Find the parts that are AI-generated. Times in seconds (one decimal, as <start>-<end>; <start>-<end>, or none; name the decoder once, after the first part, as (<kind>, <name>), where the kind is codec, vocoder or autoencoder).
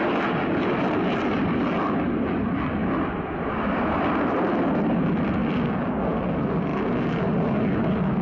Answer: 5.4-6.0 (vocoder, BigVGAN v2)